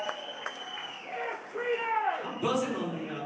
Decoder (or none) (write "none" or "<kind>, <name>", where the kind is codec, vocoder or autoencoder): codec, DAC